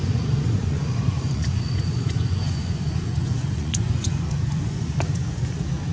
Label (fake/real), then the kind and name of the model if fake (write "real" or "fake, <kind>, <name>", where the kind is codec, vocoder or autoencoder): fake, vocoder, Vocos